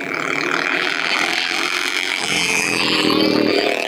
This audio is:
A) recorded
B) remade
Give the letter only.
B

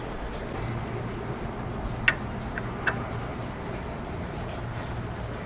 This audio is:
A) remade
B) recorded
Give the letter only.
B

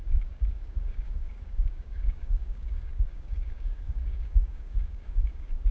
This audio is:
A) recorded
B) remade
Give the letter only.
B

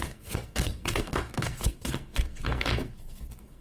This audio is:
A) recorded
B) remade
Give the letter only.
B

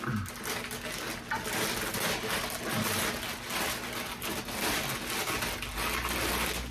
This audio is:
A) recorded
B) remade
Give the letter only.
A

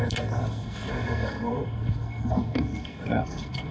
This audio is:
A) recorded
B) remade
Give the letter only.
B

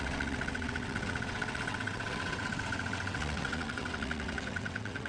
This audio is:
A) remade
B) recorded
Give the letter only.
A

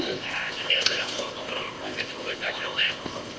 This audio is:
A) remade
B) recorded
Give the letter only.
A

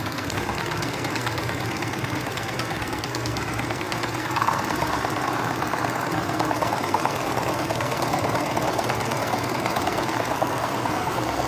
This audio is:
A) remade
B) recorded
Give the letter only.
A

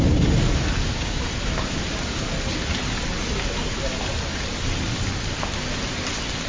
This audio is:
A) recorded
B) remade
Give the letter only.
A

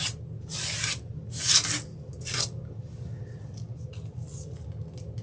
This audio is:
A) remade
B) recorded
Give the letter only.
B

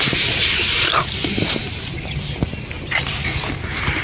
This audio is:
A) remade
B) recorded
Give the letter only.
B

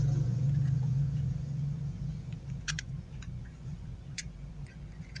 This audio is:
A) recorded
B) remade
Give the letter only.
B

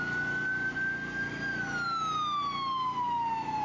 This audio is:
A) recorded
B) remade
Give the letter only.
A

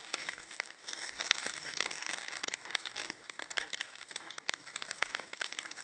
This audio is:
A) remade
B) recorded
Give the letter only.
A